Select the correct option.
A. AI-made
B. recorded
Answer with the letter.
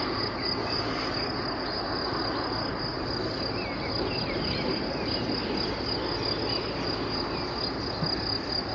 B